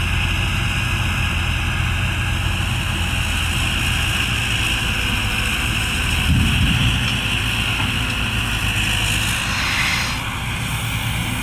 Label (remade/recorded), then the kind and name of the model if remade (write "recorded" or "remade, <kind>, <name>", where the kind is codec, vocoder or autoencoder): recorded